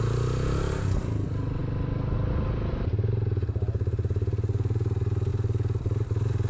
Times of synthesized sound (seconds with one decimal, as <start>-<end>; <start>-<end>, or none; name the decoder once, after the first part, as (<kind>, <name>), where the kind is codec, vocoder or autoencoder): none